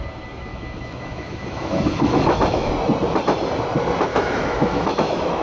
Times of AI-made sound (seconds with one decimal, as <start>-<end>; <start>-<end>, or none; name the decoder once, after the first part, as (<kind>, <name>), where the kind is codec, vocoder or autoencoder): 0.5-2.7 (autoencoder, DAC-VAE); 4.1-5.4